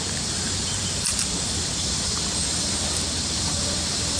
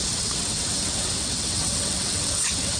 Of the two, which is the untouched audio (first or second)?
first